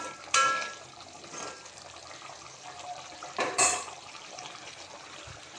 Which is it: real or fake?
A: fake